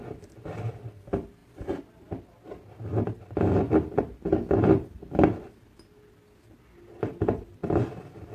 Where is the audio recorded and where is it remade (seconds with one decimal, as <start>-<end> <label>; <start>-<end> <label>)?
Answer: 0.0-8.3 recorded